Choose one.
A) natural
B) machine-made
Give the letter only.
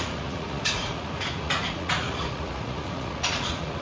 B